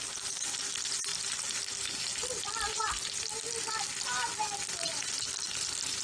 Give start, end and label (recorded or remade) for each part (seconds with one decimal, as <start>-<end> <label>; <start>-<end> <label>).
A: 0.0-6.0 recorded